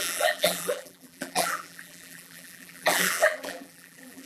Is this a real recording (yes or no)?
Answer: no